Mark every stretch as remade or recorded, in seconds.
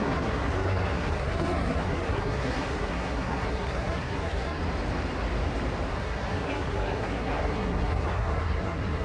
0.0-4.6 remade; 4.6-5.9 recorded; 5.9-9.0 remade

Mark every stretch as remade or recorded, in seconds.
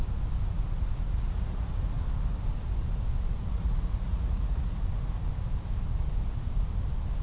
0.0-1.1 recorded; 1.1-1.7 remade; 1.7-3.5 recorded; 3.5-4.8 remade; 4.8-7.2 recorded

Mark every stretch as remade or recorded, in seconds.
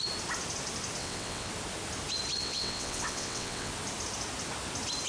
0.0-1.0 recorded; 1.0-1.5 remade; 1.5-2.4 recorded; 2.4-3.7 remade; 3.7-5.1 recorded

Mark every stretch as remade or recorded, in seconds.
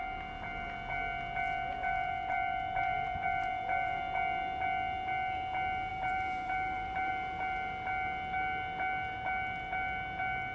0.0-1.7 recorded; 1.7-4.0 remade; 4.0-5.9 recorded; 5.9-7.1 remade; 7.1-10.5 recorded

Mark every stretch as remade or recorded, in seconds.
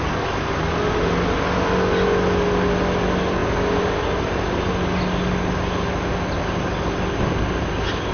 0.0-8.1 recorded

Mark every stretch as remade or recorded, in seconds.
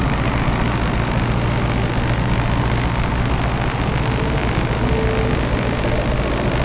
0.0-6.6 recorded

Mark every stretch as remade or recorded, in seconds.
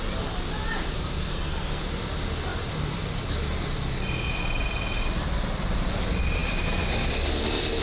0.0-1.3 recorded; 1.3-1.8 remade; 1.8-7.8 recorded